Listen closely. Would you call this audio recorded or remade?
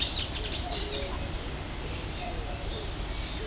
recorded